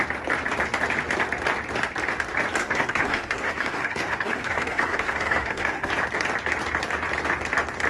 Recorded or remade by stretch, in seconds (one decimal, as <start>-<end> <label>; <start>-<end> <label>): 0.0-2.6 recorded; 2.6-5.9 remade; 5.9-7.9 recorded